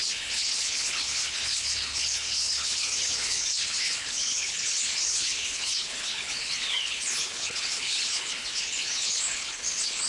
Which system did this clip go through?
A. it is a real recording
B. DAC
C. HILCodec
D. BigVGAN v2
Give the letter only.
C